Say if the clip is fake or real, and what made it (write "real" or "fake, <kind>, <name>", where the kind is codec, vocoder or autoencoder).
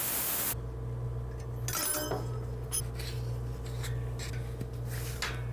real